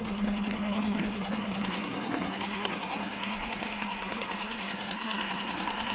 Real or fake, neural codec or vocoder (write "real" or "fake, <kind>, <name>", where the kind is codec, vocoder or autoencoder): fake, codec, SNAC